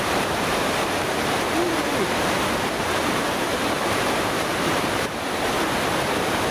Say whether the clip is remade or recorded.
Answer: remade